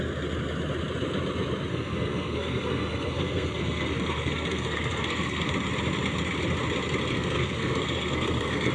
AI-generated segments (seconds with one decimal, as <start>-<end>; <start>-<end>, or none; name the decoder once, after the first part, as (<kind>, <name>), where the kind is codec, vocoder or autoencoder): 1.7-5.5 (codec, SNAC); 7.1-8.7